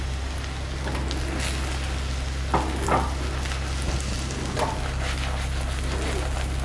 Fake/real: real